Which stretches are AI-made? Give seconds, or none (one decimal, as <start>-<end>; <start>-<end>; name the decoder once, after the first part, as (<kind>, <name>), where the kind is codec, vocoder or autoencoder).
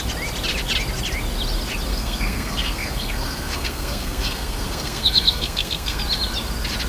1.9-6.0 (codec, SNAC)